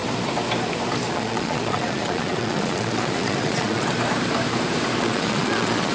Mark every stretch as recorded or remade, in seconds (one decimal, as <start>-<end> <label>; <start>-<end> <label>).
0.0-1.1 recorded; 1.1-3.8 remade; 3.8-5.0 recorded; 5.0-5.9 remade